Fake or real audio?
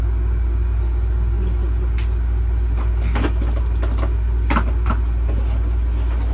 real